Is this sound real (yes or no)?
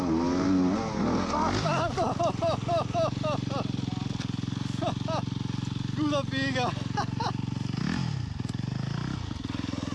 yes